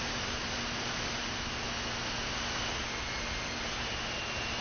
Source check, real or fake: real